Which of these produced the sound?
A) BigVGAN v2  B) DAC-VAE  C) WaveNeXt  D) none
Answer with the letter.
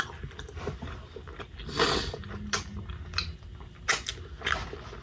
D